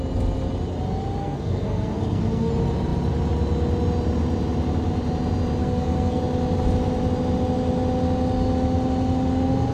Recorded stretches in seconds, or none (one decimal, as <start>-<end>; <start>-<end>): 0.0-1.2; 2.5-5.6; 6.2-9.7